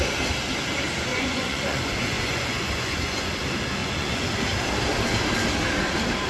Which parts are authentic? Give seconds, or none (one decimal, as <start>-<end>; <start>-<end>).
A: 0.0-1.1; 3.3-3.8; 4.3-6.3